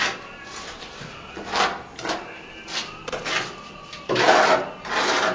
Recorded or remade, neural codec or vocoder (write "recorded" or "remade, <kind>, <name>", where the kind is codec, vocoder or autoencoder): recorded